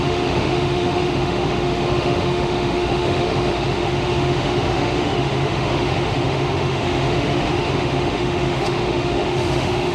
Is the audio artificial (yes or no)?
yes